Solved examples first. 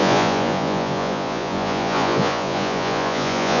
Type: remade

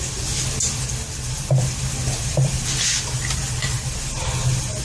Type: recorded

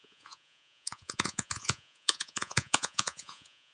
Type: remade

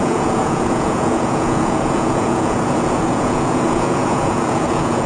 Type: remade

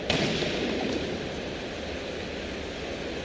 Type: recorded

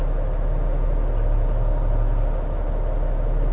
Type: recorded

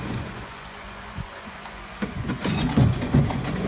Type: remade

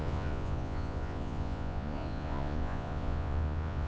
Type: remade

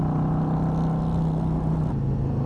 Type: recorded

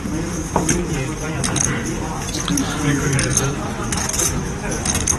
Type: recorded